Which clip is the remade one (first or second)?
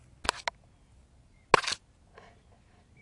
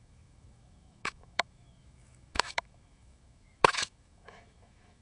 second